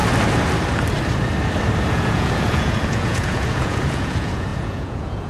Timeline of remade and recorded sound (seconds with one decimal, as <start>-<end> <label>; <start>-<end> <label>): 0.0-1.9 recorded; 1.9-5.3 remade